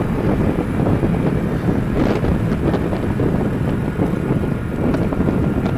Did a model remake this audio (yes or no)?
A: no